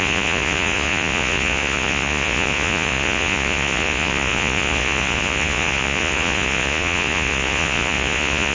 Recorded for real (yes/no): no